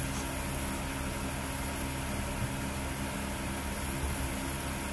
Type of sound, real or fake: real